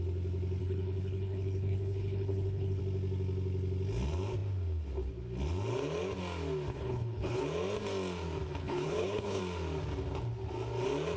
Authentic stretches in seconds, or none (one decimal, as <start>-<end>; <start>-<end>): 0.0-0.6; 2.8-6.7; 7.4-8.6; 9.4-11.2